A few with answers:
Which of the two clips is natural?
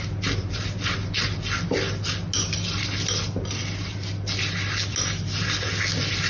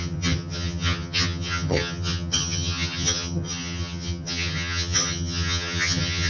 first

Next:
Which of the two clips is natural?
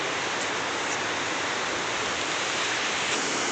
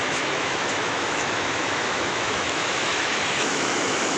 first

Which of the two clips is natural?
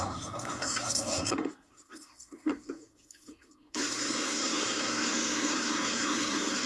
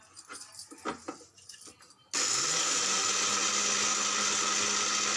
second